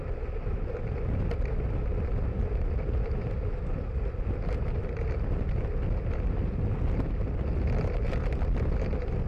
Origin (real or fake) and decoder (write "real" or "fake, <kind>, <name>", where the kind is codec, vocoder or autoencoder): real